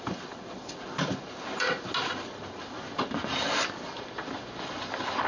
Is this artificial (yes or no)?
no